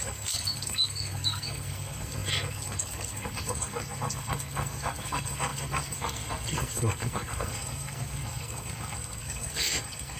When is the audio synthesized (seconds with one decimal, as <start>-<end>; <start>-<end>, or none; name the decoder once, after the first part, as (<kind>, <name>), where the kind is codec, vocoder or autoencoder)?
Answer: 0.0-10.2 (codec, SNAC)